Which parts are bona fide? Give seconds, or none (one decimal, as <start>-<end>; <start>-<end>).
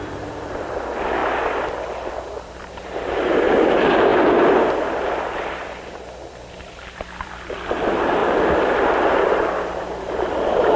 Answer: 1.2-2.2; 8.2-10.0